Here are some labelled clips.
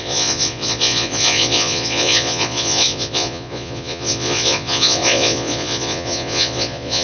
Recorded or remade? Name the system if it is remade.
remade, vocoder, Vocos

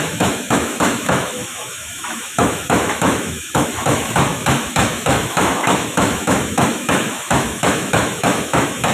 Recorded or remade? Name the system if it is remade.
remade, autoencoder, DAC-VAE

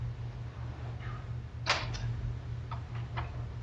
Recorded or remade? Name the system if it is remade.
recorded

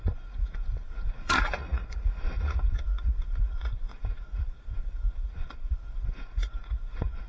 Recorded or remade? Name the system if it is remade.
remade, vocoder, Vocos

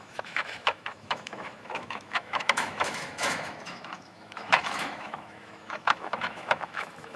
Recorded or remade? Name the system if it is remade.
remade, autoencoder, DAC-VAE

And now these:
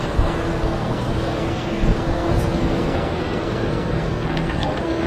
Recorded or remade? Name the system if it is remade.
remade, codec, SNAC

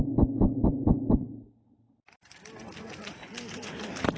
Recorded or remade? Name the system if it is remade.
recorded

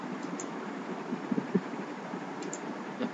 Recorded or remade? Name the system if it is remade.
recorded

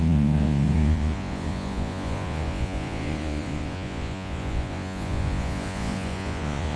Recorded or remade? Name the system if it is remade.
remade, vocoder, Vocos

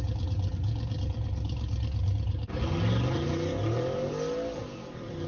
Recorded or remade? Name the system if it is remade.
recorded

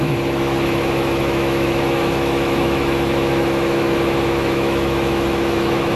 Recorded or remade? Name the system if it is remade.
remade, autoencoder, DAC-VAE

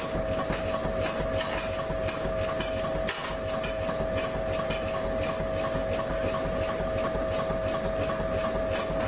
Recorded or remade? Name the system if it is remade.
recorded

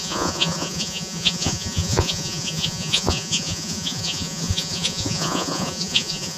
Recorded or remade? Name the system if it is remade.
remade, vocoder, Vocos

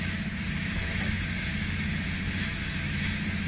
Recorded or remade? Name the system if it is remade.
remade, autoencoder, DAC-VAE